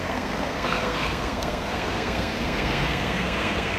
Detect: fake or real fake